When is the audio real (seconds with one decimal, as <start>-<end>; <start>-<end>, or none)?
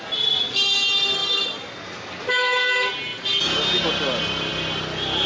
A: 0.0-1.2; 1.7-5.3